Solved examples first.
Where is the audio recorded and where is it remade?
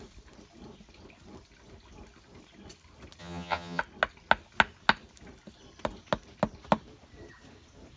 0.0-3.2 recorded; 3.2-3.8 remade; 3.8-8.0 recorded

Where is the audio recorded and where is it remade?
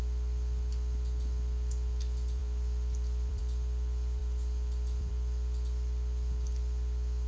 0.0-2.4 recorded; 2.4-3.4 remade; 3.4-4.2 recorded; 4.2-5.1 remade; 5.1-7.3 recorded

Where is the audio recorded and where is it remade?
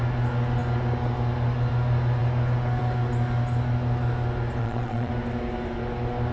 0.0-4.6 recorded; 4.6-5.1 remade; 5.1-6.3 recorded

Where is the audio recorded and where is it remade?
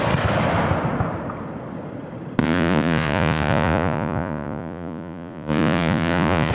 0.0-2.4 recorded; 2.4-6.5 remade